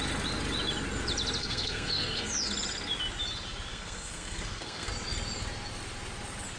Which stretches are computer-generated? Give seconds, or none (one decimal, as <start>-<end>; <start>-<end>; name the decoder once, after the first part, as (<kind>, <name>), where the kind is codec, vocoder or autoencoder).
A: 1.4-2.3 (codec, SNAC); 3.7-4.9